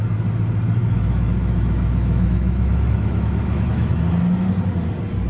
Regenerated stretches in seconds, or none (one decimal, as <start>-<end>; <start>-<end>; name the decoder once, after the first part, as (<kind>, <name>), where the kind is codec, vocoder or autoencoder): 0.8-4.0 (autoencoder, DAC-VAE)